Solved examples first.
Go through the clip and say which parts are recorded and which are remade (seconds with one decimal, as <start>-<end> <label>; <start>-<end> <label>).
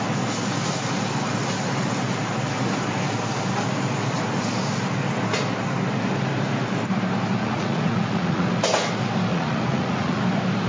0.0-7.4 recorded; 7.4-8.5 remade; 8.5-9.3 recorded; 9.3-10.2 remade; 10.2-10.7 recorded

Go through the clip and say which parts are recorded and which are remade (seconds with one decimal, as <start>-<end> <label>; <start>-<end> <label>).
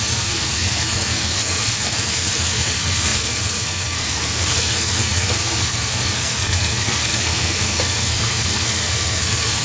0.0-9.6 remade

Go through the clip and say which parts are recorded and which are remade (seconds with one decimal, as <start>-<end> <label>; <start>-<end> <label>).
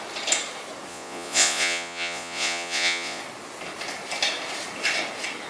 0.0-0.9 recorded; 0.9-3.2 remade; 3.2-5.5 recorded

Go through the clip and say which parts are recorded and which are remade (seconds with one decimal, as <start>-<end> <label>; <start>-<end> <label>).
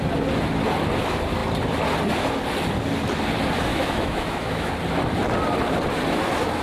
0.0-3.7 recorded; 3.7-4.7 remade; 4.7-6.6 recorded